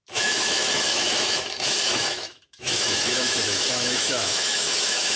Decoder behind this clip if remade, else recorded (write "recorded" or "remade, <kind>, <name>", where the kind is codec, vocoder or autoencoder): remade, autoencoder, DAC-VAE